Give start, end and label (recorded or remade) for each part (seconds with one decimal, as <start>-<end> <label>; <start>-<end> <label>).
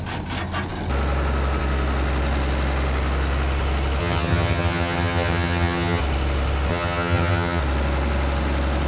0.0-4.0 recorded; 4.0-6.0 remade; 6.0-6.7 recorded; 6.7-7.6 remade; 7.6-8.9 recorded